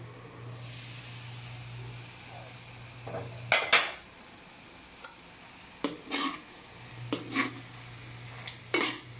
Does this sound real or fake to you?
real